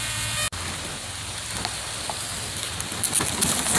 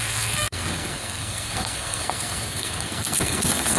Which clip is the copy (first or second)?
second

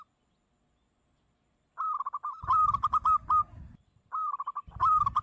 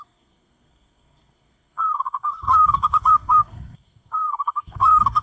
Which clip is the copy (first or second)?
second